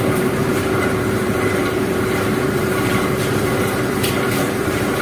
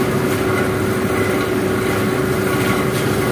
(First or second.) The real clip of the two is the second